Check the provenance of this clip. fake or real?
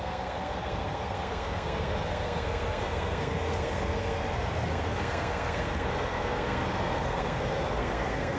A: fake